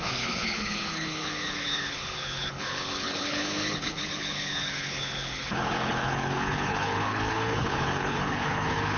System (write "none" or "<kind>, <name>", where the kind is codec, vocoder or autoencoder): codec, HILCodec